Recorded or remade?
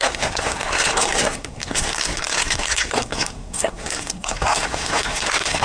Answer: remade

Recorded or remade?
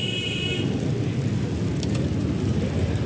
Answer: recorded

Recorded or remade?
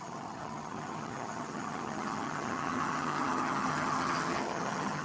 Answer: remade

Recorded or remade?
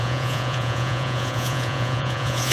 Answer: remade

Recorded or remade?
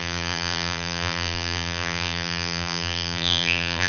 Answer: remade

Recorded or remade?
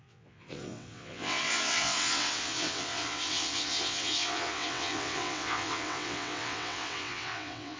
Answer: remade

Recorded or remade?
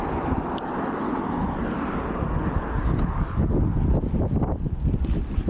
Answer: recorded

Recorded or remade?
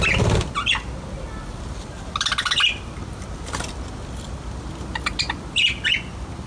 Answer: recorded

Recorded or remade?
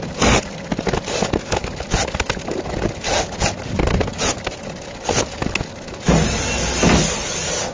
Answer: recorded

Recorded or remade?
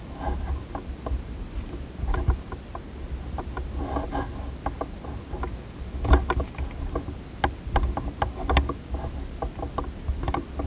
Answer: recorded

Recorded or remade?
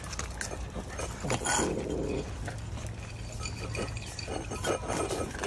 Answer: recorded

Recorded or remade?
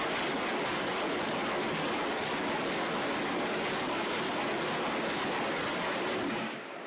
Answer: recorded